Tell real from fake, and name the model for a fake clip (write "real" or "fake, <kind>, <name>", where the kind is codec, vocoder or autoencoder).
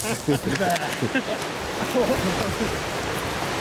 real